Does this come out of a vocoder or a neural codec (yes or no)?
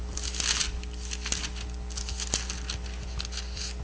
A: no